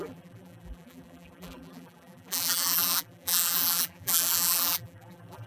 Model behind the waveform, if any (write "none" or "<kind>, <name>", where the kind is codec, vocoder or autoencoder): vocoder, BigVGAN v2